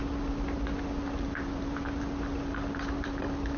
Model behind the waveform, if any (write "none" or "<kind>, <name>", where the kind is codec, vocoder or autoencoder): none